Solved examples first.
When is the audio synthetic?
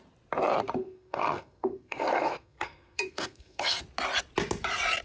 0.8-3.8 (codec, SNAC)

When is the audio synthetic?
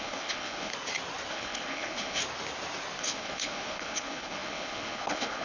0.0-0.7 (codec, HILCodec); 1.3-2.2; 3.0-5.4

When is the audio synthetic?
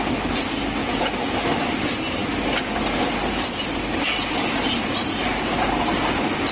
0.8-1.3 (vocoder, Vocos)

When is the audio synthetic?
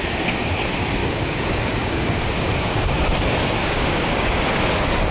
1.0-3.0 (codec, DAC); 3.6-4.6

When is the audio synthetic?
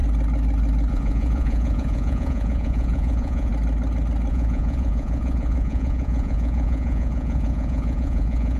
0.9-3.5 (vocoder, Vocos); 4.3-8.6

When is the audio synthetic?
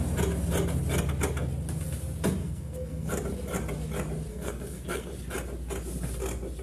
2.4-3.1 (codec, SNAC); 4.3-5.1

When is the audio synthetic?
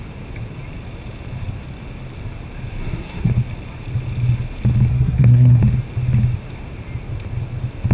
2.8-3.3 (codec, SNAC); 4.9-5.6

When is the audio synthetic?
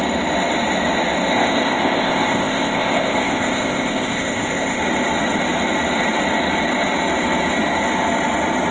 1.3-4.8 (codec, ZipCodec)